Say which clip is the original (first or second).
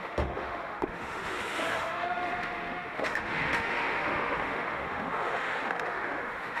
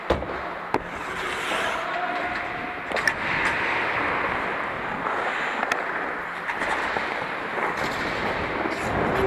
second